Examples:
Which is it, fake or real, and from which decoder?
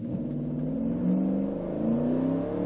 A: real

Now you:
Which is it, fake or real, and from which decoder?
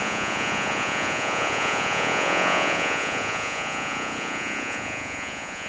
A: fake, vocoder, Vocos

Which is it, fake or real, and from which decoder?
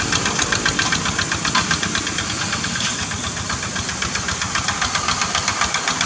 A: real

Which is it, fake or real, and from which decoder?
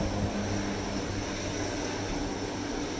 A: real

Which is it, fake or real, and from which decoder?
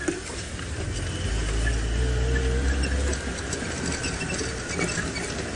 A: real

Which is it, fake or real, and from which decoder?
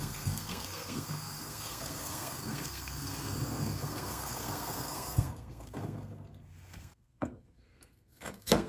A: fake, codec, SNAC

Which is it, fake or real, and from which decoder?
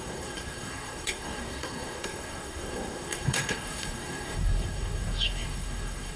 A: fake, codec, SNAC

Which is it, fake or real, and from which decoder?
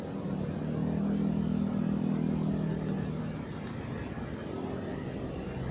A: real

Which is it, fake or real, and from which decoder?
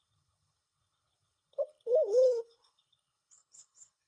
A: fake, codec, HILCodec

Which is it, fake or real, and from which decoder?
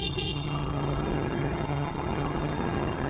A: fake, vocoder, HiFi-GAN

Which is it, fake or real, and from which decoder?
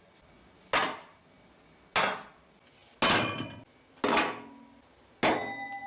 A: real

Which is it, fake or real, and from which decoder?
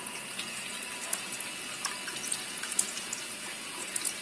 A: fake, vocoder, Vocos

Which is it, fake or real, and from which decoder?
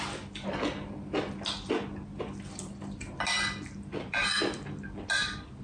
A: real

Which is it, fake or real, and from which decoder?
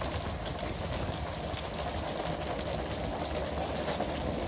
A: real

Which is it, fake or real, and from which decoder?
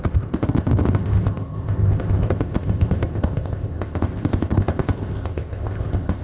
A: fake, codec, ZipCodec